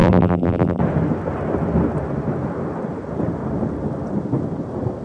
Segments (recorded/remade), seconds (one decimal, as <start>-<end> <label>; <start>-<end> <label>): 0.0-0.8 remade; 0.8-5.0 recorded